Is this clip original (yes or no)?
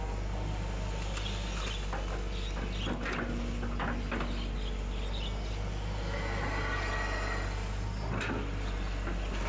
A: yes